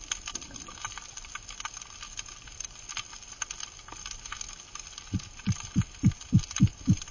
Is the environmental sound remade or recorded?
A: recorded